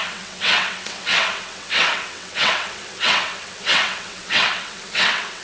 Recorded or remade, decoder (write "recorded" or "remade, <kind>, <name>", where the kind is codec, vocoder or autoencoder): remade, vocoder, WaveNeXt